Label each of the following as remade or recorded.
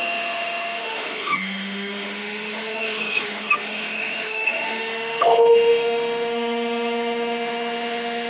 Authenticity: remade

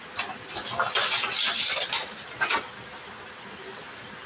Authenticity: recorded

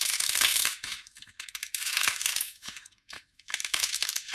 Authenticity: remade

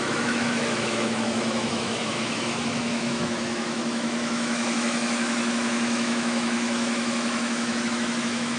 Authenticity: remade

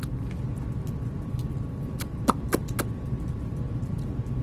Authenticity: recorded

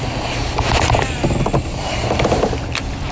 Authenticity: recorded